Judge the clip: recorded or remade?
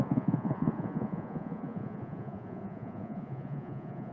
remade